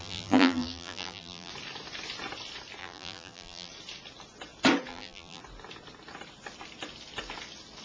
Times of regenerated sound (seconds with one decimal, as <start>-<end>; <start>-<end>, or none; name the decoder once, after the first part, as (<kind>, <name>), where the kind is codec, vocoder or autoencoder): 0.0-1.5 (vocoder, BigVGAN v2); 2.8-3.7; 4.9-5.4